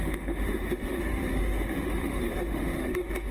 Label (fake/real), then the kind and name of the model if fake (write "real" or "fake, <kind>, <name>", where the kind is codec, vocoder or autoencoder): fake, autoencoder, DAC-VAE